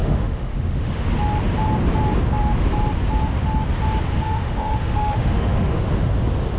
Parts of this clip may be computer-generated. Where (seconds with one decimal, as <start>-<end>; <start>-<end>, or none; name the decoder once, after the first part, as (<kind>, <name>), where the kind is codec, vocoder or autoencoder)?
0.0-1.0 (autoencoder, DAC-VAE); 4.1-5.9